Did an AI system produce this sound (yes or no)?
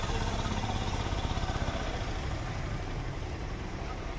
yes